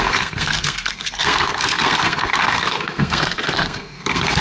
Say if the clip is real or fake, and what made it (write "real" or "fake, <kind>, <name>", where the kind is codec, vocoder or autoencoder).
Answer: fake, codec, SNAC